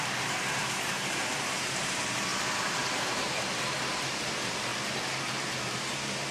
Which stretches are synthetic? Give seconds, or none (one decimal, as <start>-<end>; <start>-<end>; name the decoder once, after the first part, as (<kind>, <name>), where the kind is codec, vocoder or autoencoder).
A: 0.0-4.7 (vocoder, BigVGAN v2); 5.8-6.3